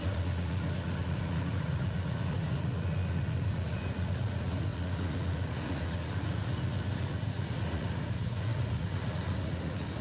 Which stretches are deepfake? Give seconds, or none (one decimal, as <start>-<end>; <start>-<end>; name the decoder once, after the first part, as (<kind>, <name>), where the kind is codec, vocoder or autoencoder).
0.0-10.0 (vocoder, Vocos)